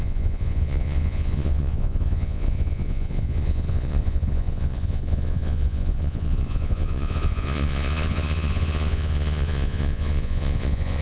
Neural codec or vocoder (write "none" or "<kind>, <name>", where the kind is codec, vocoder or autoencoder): vocoder, Vocos